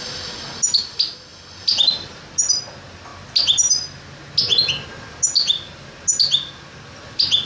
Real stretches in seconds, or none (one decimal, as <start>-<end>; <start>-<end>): 0.0-7.5

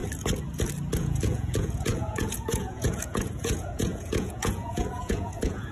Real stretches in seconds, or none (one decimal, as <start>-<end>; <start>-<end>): 0.0-1.0

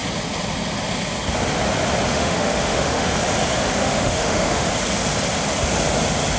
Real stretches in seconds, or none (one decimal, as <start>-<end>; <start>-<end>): 0.0-2.1; 3.1-3.8; 4.7-6.4

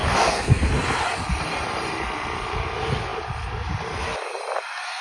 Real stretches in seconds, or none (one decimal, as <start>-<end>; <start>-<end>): 0.7-5.0

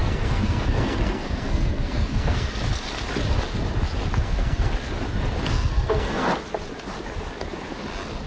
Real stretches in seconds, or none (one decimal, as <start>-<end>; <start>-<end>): 2.5-4.1; 4.7-5.5; 6.3-8.3